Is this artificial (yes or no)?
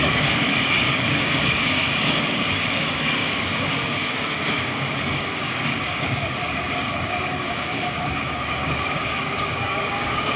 yes